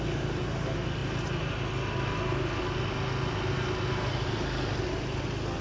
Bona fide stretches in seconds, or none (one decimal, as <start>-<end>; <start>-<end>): 0.0-5.6